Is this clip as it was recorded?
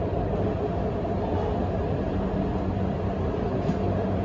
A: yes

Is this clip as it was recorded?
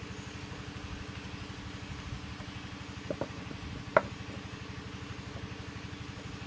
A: yes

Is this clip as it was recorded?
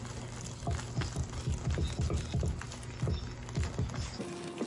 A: yes